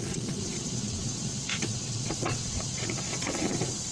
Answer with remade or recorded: remade